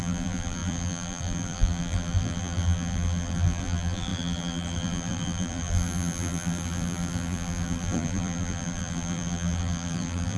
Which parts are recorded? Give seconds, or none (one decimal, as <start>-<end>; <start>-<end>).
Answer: none